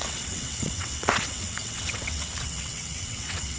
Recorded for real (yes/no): no